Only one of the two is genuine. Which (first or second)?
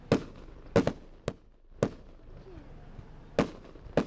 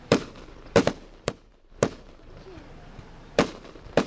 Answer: first